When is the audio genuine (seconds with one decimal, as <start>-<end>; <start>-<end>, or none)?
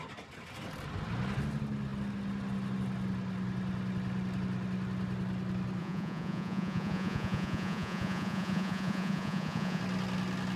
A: 0.0-5.8; 9.8-10.6